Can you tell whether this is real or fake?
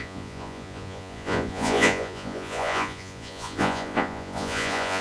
fake